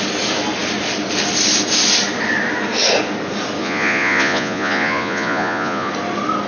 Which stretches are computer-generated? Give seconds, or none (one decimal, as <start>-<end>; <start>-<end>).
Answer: 3.6-5.9